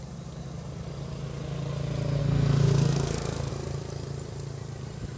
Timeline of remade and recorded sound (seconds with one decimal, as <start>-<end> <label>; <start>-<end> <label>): 0.0-2.2 recorded; 2.2-3.5 remade; 3.5-5.2 recorded